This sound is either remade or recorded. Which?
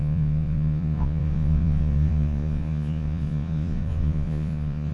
remade